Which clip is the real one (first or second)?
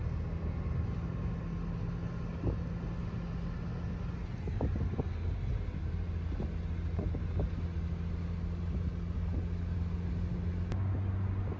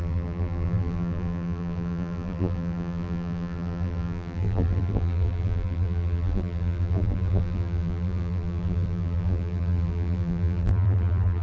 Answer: first